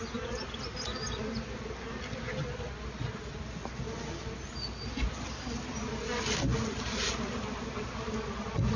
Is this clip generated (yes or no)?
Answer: no